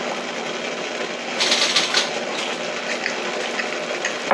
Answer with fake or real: real